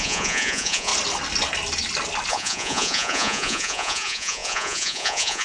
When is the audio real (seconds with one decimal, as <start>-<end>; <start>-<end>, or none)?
0.9-2.3